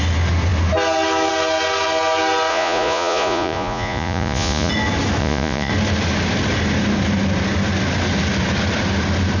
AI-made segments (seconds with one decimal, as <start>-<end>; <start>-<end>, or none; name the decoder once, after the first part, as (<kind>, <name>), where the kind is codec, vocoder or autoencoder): 2.5-4.7 (vocoder, Vocos); 5.2-5.7